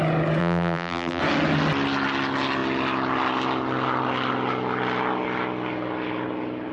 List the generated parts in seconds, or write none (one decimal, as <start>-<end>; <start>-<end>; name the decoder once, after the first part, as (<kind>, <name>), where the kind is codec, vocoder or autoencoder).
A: 0.4-1.2 (vocoder, BigVGAN v2)